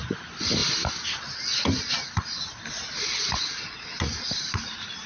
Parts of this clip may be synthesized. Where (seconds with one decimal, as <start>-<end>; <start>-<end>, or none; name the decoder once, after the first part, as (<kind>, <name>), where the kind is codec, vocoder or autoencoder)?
none